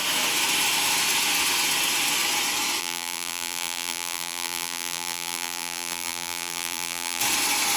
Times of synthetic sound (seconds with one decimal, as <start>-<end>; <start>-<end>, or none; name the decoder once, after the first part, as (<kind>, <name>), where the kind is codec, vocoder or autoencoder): 2.8-7.2 (vocoder, BigVGAN v2)